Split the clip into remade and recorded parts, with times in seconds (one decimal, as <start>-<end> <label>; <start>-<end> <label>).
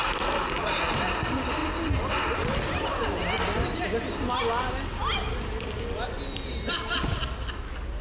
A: 0.0-8.0 recorded